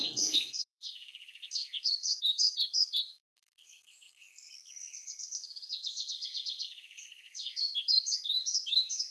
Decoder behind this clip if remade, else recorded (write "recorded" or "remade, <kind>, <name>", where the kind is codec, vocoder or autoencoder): remade, codec, SNAC